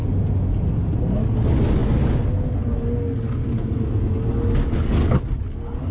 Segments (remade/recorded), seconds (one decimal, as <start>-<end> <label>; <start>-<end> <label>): 0.0-5.9 recorded